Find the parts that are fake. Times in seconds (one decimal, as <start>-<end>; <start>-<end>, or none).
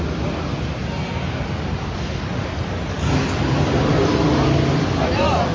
none